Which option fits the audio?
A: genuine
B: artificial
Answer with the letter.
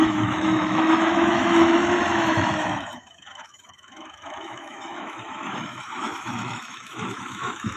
B